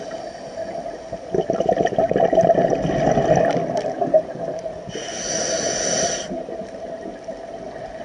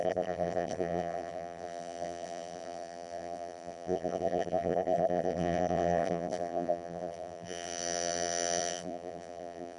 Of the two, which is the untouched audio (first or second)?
first